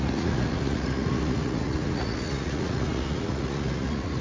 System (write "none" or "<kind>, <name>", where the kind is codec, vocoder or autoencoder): vocoder, Vocos